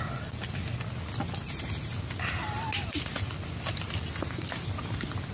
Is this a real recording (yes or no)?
yes